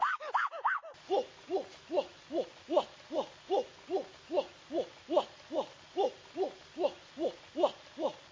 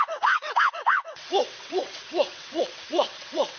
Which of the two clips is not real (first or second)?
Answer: second